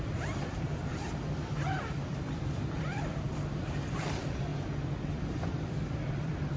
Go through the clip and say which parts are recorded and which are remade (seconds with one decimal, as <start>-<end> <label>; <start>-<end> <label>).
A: 0.0-4.5 remade; 4.5-5.2 recorded; 5.2-6.6 remade